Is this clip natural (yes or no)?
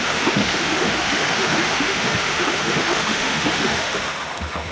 no